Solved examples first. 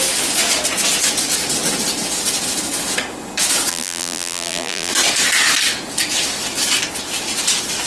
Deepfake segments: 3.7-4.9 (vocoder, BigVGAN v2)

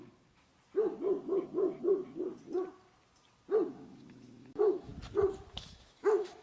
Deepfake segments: 0.0-0.5 (autoencoder, DAC-VAE); 3.7-4.9; 5.5-6.4

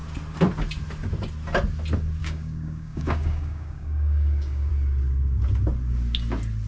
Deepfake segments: 2.2-4.7 (codec, DAC)